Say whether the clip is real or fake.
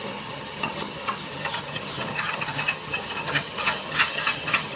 fake